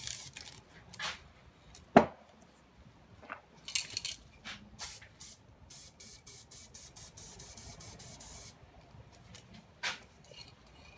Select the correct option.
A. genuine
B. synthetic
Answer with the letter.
A